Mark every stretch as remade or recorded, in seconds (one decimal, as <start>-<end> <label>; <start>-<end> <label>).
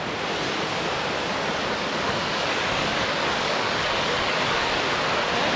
0.0-1.6 recorded; 1.6-5.0 remade; 5.0-5.6 recorded